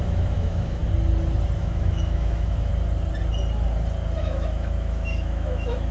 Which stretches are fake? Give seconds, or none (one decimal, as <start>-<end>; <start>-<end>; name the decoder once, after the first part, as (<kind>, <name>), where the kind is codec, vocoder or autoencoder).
0.0-0.8 (autoencoder, DAC-VAE); 1.6-2.7; 4.2-5.9